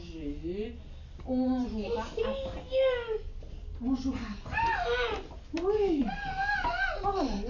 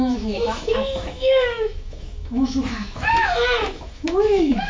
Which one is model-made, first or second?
second